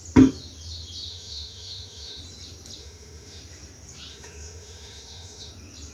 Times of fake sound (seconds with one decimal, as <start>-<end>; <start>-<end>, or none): 1.1-2.2; 2.8-3.4; 4.1-5.5